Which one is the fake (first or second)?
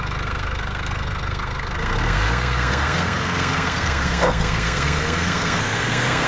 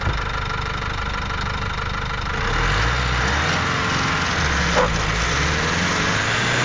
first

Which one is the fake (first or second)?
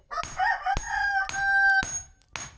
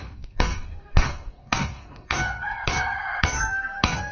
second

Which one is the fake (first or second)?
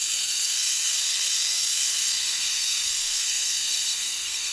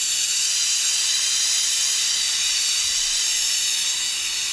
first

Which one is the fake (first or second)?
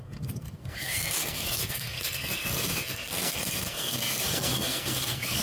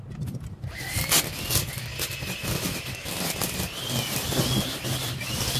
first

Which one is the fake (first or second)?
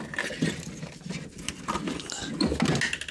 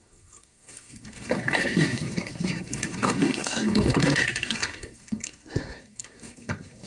second